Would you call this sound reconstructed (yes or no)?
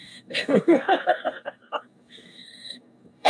yes